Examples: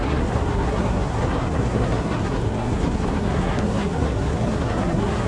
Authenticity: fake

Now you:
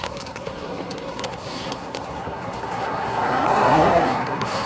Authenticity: fake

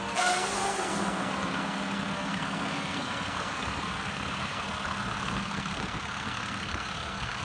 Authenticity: fake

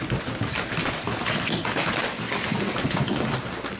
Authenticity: real